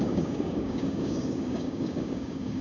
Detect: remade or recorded remade